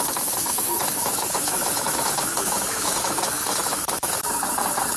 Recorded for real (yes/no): no